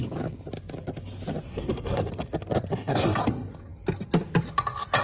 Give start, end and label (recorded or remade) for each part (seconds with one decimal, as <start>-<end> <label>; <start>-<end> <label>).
0.0-1.5 recorded; 1.5-2.1 remade; 2.1-2.7 recorded; 2.7-3.2 remade; 3.2-5.0 recorded